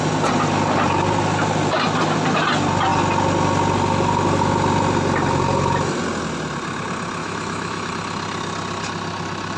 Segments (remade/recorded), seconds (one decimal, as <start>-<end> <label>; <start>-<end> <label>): 0.0-7.2 recorded; 7.2-7.9 remade; 7.9-9.6 recorded